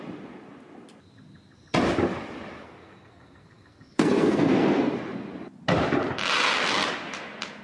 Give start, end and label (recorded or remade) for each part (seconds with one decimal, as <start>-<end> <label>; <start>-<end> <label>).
0.0-2.6 recorded; 2.6-4.9 remade; 4.9-7.6 recorded